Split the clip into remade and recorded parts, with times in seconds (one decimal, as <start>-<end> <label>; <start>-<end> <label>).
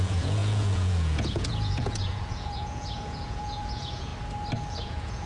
0.0-4.1 remade; 4.1-4.7 recorded; 4.7-5.3 remade